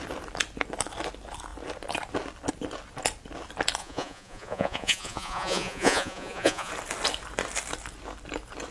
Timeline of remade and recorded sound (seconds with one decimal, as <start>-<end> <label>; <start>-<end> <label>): 0.0-3.8 recorded; 3.8-6.7 remade; 6.7-8.7 recorded